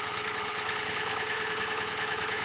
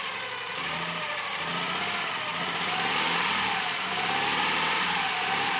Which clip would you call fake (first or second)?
first